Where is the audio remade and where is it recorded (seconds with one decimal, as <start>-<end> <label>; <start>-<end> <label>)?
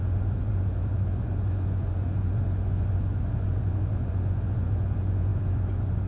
0.0-6.1 remade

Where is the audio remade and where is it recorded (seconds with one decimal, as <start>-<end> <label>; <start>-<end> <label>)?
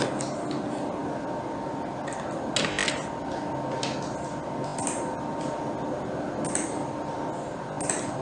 0.0-8.2 recorded